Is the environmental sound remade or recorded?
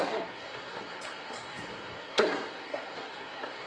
remade